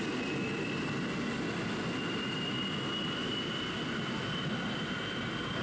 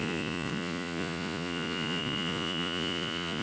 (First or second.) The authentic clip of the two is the first